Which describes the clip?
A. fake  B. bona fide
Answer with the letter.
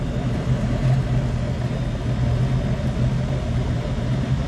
B